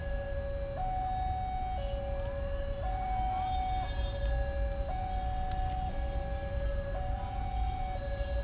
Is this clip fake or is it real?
real